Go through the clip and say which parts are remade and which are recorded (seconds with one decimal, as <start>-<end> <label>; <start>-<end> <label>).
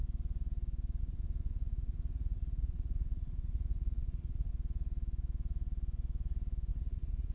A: 0.0-1.0 recorded; 1.0-4.5 remade; 4.5-6.7 recorded; 6.7-7.3 remade